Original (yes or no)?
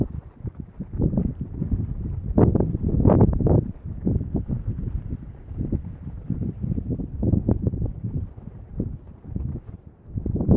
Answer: no